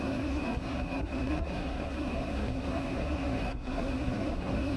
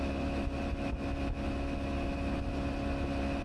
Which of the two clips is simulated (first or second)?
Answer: first